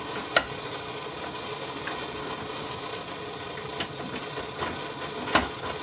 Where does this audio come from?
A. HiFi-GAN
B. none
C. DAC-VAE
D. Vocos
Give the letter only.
B